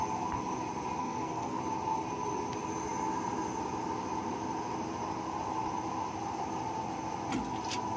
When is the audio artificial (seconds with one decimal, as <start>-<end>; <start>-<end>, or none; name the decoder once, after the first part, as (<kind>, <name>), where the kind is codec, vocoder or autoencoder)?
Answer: 1.0-1.6 (codec, SNAC)